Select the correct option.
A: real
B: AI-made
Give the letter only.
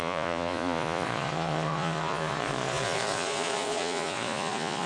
B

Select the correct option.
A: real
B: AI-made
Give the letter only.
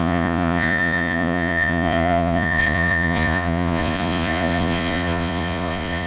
B